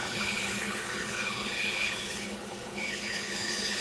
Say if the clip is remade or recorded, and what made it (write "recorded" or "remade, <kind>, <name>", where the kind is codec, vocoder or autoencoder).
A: remade, codec, HILCodec